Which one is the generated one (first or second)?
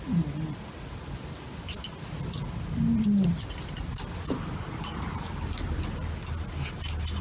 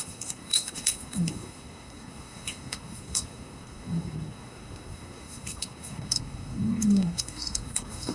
second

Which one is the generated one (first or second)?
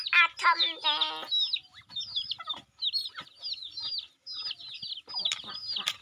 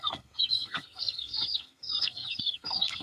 second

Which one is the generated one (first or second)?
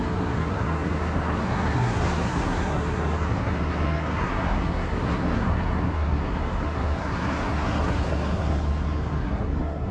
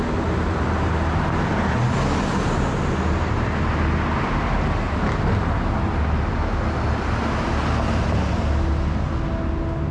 first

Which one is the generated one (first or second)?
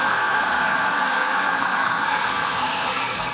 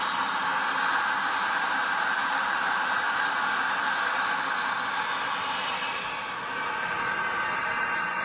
first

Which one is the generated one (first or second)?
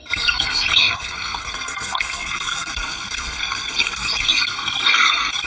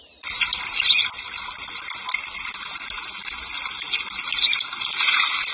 first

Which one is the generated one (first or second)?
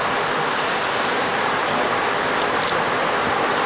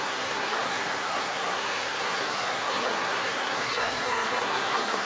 second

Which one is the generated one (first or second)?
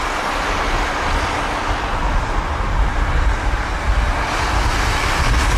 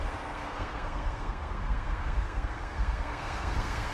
second